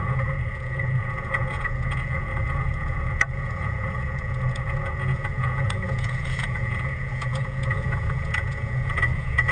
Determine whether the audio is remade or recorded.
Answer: remade